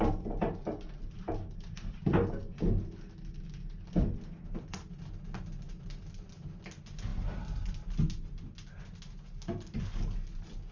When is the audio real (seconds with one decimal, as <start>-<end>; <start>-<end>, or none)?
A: 0.0-10.7